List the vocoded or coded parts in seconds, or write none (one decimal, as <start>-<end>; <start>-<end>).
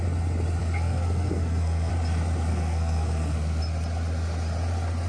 0.6-1.9; 2.5-3.6